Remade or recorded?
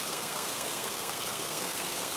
remade